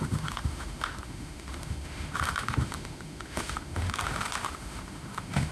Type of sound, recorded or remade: remade